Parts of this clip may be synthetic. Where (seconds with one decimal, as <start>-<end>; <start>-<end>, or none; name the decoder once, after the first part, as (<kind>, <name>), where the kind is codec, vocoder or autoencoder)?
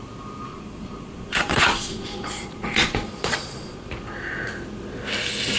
0.5-3.9 (vocoder, Vocos)